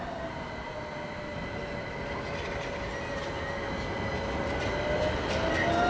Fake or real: real